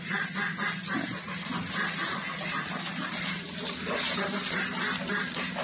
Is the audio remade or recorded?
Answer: recorded